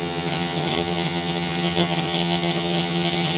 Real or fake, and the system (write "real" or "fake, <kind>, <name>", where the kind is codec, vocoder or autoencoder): fake, vocoder, HiFi-GAN